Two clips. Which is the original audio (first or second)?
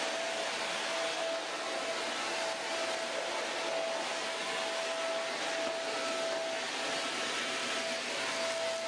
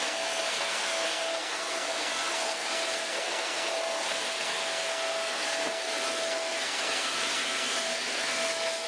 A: first